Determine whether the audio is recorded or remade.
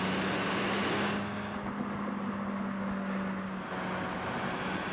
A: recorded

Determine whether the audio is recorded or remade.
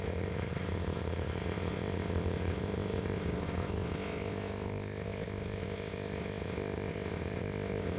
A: remade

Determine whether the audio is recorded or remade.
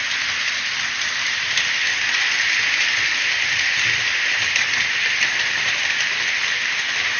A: recorded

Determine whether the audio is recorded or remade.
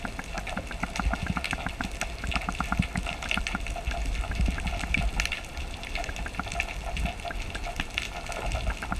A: recorded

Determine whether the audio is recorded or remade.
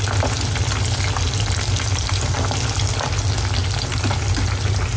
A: recorded